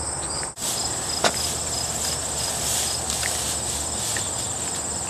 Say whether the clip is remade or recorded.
recorded